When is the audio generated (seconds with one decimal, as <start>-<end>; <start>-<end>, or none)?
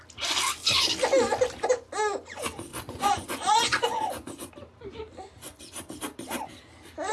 2.7-4.5